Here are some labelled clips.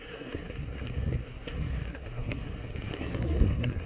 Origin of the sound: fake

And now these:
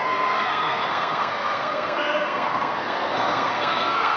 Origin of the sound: fake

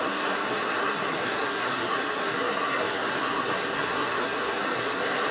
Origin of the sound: fake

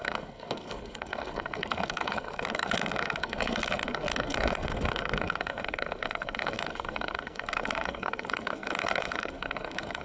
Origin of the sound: fake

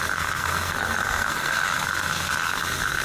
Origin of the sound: fake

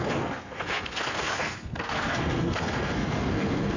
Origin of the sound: fake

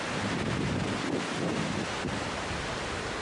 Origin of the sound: real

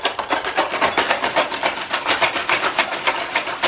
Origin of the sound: real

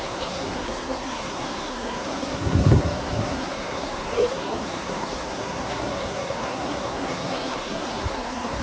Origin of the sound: fake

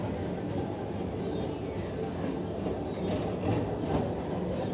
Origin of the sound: real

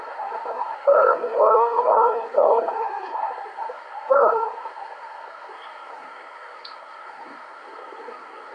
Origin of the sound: fake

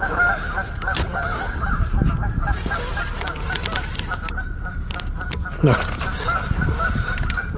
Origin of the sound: real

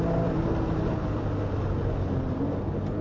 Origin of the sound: real